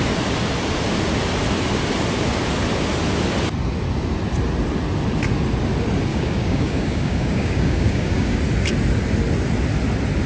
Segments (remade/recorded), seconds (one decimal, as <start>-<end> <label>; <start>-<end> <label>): 0.0-6.1 recorded; 6.1-8.4 remade; 8.4-10.3 recorded